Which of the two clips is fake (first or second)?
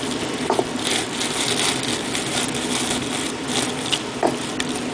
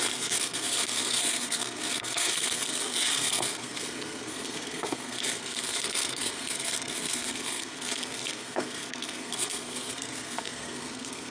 second